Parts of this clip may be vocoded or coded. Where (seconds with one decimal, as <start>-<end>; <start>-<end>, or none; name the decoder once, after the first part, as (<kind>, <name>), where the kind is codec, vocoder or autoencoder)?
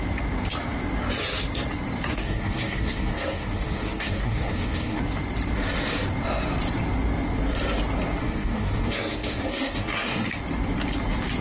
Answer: 2.1-5.0 (codec, SNAC); 8.2-10.3